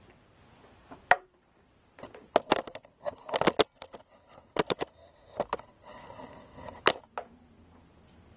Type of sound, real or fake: real